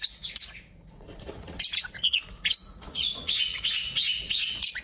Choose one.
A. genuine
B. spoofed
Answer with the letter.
B